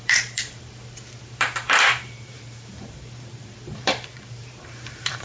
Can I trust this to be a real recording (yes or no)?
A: no